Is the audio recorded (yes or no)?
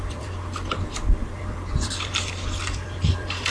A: no